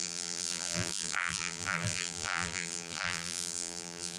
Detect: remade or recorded remade